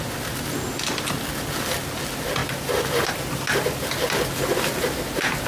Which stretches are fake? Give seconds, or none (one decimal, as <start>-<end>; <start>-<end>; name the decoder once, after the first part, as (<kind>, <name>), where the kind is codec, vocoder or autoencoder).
none